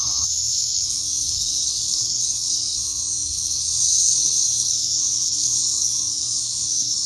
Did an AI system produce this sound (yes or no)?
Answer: yes